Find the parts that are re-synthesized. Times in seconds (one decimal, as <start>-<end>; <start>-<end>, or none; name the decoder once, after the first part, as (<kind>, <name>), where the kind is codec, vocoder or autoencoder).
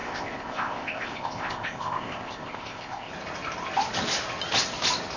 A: 0.0-3.1 (codec, ZipCodec)